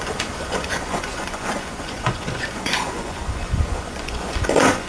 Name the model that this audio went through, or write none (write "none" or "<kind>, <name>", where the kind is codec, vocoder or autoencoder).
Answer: vocoder, Vocos